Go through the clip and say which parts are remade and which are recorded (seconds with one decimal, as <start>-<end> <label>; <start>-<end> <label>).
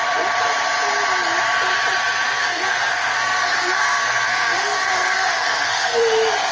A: 0.0-2.4 recorded; 2.4-6.0 remade; 6.0-6.5 recorded